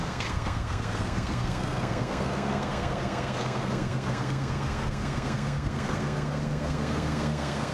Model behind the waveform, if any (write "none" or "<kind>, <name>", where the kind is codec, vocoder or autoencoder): codec, SNAC